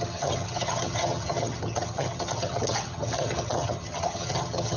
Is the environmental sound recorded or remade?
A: remade